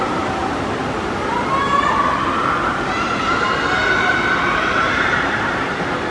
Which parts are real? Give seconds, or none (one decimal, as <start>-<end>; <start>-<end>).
0.4-4.1